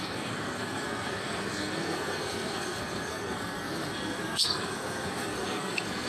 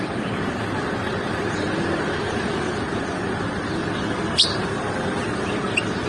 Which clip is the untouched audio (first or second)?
second